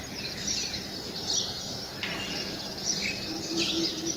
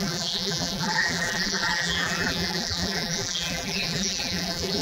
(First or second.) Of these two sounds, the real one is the first